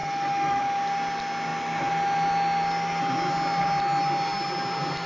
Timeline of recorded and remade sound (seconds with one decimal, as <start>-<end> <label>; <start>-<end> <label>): 0.0-0.6 remade; 0.6-5.1 recorded